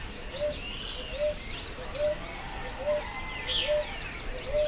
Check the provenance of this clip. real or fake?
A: real